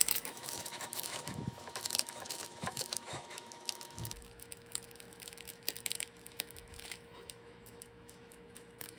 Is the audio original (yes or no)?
no